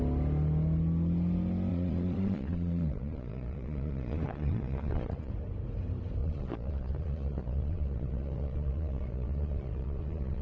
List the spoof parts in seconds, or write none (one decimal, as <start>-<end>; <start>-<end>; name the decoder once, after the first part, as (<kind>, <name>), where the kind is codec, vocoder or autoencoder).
1.7-5.3 (vocoder, Vocos); 6.2-10.4